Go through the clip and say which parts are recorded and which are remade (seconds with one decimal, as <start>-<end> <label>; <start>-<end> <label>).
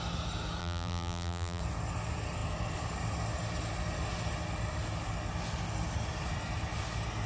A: 0.0-0.6 recorded; 0.6-1.6 remade; 1.6-7.3 recorded